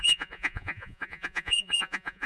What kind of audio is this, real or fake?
fake